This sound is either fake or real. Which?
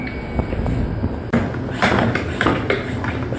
real